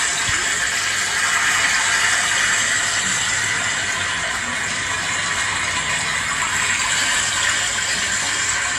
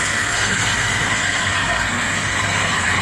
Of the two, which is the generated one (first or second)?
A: second